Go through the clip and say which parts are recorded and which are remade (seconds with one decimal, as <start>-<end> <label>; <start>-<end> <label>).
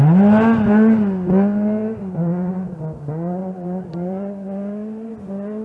0.0-1.8 recorded; 1.8-2.5 remade; 2.5-3.4 recorded; 3.4-5.1 remade; 5.1-5.6 recorded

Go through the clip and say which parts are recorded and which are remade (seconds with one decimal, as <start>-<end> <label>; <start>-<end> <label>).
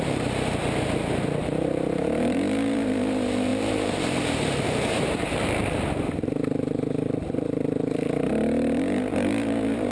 0.0-0.6 remade; 0.6-1.4 recorded; 1.4-9.9 remade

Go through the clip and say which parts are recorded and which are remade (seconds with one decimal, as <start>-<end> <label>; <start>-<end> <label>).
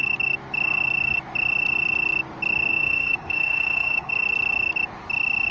0.0-2.7 recorded; 2.7-4.1 remade; 4.1-5.5 recorded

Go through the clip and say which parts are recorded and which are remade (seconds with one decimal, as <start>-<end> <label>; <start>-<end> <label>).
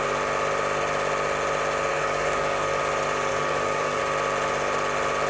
0.0-1.9 recorded; 1.9-2.8 remade; 2.8-3.3 recorded; 3.3-4.0 remade; 4.0-5.3 recorded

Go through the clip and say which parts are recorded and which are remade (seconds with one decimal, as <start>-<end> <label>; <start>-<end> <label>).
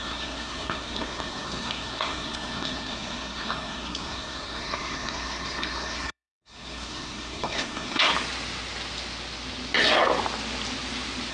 0.0-8.1 remade; 8.1-11.3 recorded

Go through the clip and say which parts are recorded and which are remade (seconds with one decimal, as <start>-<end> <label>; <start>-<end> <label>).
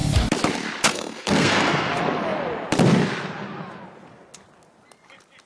0.0-0.9 recorded; 0.9-1.9 remade; 1.9-5.5 recorded